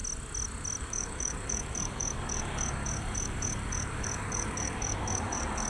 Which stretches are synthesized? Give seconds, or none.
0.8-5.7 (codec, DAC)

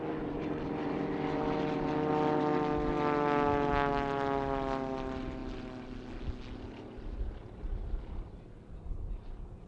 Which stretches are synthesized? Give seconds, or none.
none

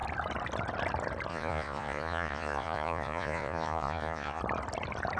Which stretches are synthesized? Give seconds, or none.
1.3-4.4 (vocoder, Vocos)